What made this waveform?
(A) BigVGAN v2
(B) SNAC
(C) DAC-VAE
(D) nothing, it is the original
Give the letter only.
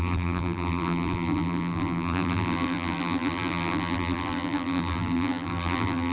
A